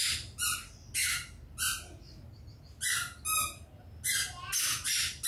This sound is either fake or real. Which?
real